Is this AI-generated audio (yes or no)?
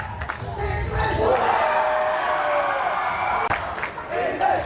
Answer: no